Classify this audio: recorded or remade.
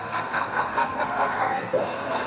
remade